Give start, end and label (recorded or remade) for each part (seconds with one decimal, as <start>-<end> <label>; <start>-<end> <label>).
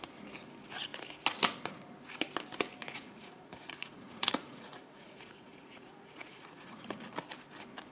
0.0-2.8 recorded; 2.8-6.8 remade; 6.8-7.9 recorded